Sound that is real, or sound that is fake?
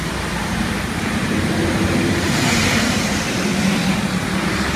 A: fake